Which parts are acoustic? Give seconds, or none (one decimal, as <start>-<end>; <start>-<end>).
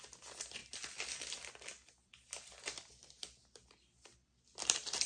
0.0-5.1